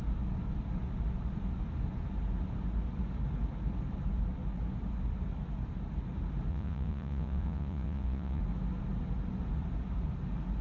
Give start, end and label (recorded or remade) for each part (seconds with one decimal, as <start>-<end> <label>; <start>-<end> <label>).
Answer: 0.0-6.5 recorded; 6.5-8.4 remade; 8.4-10.6 recorded